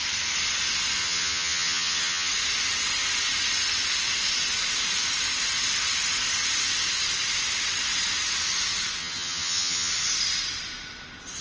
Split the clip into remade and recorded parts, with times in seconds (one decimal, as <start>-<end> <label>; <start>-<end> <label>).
0.0-1.0 recorded; 1.0-2.3 remade; 2.3-9.0 recorded; 9.0-9.9 remade; 9.9-11.4 recorded